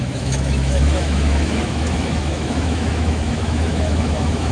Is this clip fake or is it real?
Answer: fake